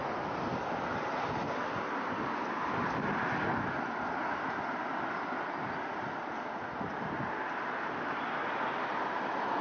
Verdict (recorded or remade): recorded